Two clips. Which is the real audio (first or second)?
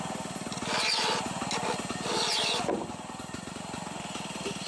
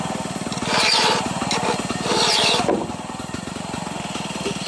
first